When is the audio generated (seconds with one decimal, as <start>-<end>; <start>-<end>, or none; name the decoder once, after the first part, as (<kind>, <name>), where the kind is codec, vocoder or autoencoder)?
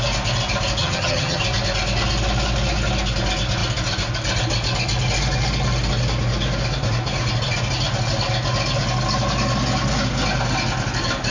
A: 0.8-1.4 (vocoder, HiFi-GAN)